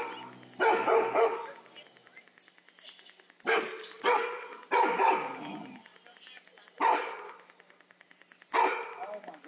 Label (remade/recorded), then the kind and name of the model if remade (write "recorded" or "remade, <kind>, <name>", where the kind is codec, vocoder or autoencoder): recorded